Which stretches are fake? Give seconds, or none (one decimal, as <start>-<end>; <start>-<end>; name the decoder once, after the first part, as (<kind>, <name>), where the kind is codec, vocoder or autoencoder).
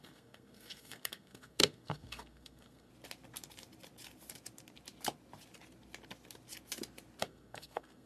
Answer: 0.0-2.9 (codec, SNAC); 7.2-8.1